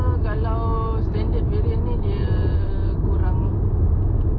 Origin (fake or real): real